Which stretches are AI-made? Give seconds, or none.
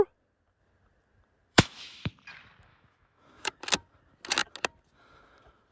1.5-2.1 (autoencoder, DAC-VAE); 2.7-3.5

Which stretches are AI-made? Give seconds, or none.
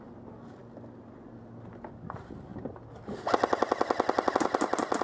none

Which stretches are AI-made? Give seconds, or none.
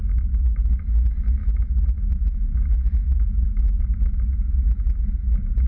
1.4-4.0 (autoencoder, DAC-VAE)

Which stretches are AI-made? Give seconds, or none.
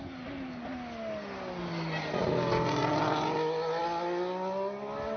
none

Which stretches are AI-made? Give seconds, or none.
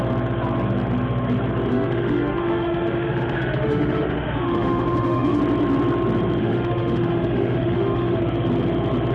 1.7-5.4 (autoencoder, DAC-VAE); 6.4-8.2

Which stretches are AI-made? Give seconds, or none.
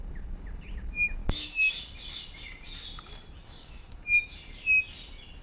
1.2-1.8 (autoencoder, DAC-VAE); 3.4-4.0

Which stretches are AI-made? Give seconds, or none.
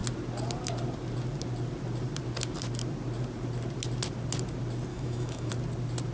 4.9-5.5 (autoencoder, DAC-VAE)